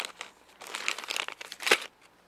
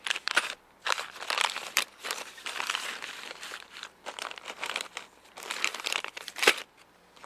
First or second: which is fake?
second